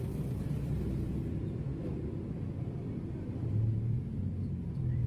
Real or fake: fake